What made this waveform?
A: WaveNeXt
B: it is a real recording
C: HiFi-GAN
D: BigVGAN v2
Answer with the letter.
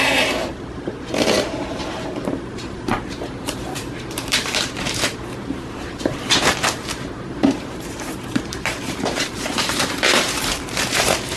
D